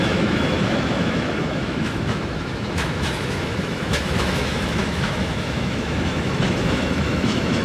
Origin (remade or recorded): remade